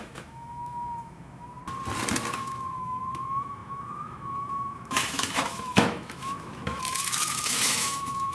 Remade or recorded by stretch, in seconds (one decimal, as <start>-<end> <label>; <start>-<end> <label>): 0.0-1.6 remade; 1.6-2.3 recorded; 2.3-8.3 remade